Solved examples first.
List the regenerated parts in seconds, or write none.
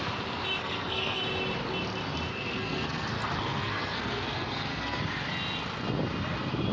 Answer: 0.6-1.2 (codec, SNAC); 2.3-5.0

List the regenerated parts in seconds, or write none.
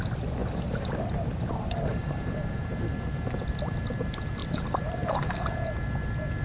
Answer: 0.4-3.5 (vocoder, BigVGAN v2); 4.4-5.3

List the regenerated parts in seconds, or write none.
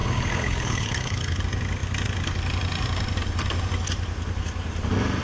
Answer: 0.0-1.4 (codec, HILCodec)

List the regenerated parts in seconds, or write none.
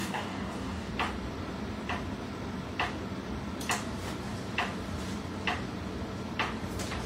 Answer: 0.0-0.9 (codec, DAC)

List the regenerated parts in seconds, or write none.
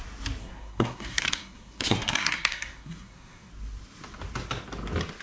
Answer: 0.4-3.5 (codec, SNAC)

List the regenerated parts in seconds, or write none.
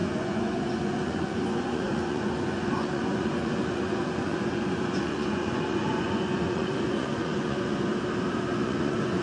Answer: 0.0-7.9 (vocoder, Vocos); 8.5-9.2